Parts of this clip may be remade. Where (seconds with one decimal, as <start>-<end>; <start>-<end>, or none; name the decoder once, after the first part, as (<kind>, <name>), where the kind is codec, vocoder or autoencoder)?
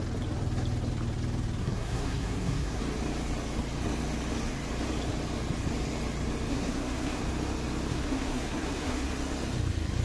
1.6-2.8 (codec, SNAC); 6.5-7.2; 7.9-9.1